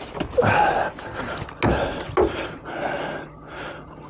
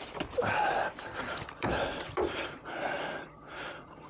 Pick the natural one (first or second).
first